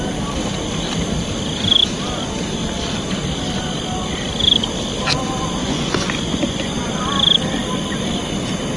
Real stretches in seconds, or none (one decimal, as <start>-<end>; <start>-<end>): 0.0-5.6; 6.9-8.8